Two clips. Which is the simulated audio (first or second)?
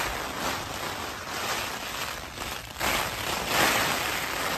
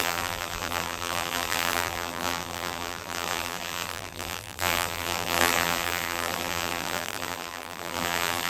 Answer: second